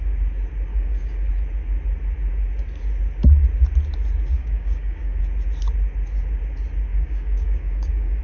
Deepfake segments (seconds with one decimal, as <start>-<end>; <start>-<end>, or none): 0.7-1.3; 4.4-5.2; 6.9-8.2